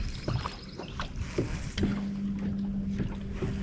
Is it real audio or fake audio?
real